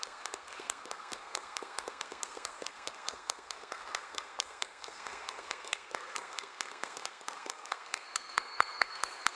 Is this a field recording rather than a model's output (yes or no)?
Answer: no